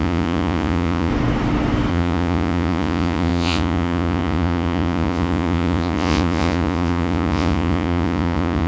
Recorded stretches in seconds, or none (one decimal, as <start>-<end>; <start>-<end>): 1.1-1.9